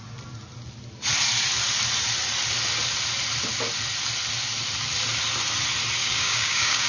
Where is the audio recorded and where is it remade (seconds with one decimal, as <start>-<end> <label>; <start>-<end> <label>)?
0.0-6.0 recorded; 6.0-6.9 remade